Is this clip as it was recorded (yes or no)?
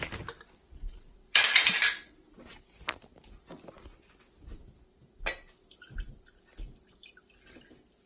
yes